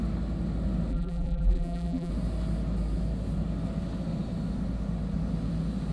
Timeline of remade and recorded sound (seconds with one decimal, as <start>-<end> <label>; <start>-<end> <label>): 0.0-0.9 recorded; 0.9-2.1 remade; 2.1-5.9 recorded